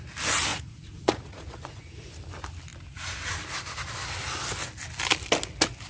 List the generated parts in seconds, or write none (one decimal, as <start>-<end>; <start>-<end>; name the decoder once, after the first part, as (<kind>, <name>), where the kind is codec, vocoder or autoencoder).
0.5-2.1 (vocoder, Vocos)